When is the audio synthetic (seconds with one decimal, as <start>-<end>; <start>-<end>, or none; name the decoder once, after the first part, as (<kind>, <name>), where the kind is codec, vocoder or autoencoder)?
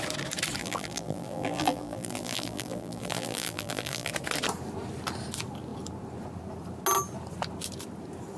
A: 0.6-4.1 (vocoder, BigVGAN v2)